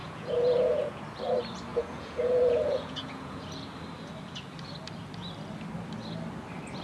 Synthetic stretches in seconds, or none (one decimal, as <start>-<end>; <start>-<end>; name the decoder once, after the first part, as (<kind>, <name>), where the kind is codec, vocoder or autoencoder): 0.0-1.0 (vocoder, Vocos); 1.7-3.4